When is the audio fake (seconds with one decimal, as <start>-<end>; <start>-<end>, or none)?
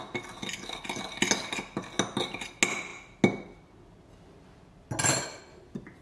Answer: none